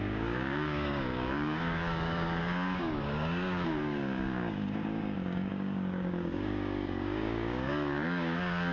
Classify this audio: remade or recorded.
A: remade